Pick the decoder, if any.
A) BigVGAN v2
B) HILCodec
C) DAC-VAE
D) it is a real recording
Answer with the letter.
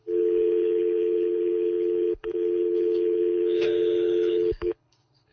B